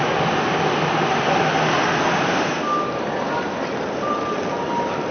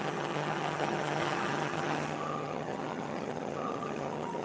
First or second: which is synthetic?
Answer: second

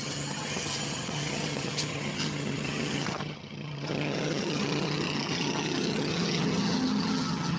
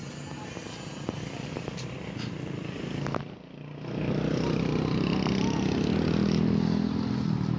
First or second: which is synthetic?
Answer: first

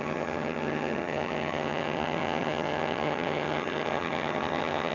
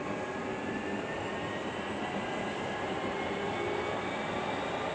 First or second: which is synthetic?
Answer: first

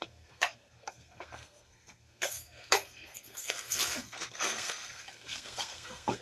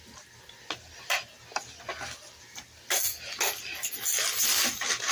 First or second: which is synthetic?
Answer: first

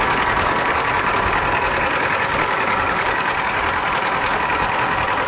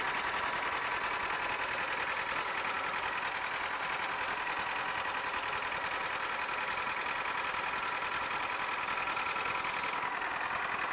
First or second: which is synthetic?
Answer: first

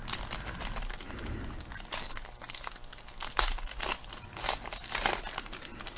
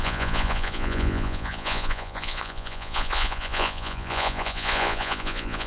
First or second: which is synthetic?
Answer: second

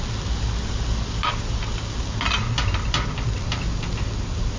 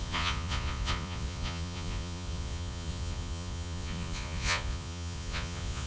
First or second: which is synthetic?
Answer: second